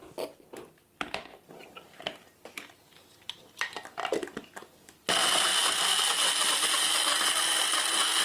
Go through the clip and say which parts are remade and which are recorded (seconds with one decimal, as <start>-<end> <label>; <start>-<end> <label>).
0.0-8.2 recorded